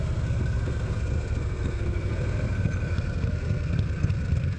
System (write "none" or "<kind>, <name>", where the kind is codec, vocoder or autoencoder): codec, SNAC